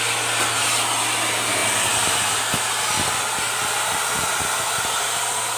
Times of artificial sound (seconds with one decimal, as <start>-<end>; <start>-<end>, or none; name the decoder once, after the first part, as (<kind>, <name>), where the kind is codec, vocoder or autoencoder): none